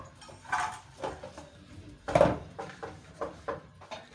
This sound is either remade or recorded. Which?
recorded